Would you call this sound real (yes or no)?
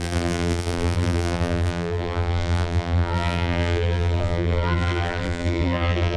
no